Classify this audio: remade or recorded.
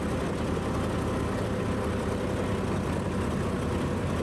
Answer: recorded